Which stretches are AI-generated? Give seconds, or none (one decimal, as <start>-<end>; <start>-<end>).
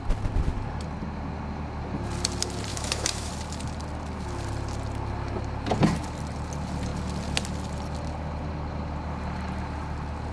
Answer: 2.7-3.3